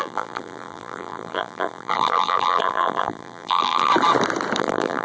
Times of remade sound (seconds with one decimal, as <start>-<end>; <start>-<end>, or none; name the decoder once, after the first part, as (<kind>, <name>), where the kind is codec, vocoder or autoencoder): 0.0-3.9 (vocoder, BigVGAN v2); 4.6-5.0